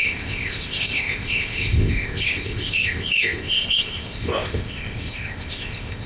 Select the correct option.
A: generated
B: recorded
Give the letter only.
A